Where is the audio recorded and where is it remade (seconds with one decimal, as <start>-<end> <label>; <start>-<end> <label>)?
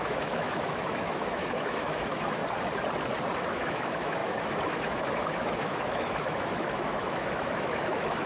0.0-2.4 remade; 2.4-3.5 recorded; 3.5-8.3 remade